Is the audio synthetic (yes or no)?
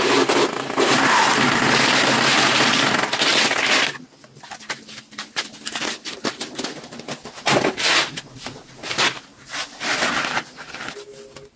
no